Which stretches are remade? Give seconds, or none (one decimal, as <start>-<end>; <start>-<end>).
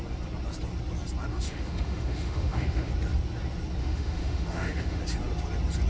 1.3-2.9; 3.8-5.0